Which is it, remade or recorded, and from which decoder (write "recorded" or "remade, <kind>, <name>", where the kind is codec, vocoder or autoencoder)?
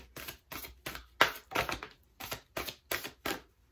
recorded